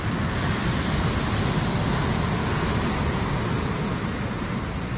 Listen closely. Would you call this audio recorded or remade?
recorded